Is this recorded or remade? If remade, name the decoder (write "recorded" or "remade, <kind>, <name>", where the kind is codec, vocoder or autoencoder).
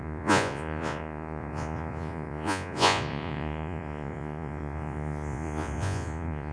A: remade, vocoder, Vocos